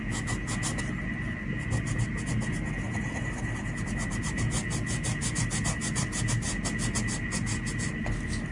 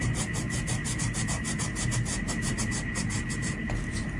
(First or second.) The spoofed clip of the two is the second